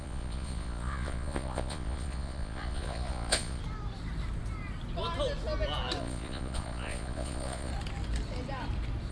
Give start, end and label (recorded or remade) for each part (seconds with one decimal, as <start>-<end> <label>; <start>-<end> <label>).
0.0-3.6 remade; 3.6-6.0 recorded; 6.0-7.7 remade; 7.7-9.1 recorded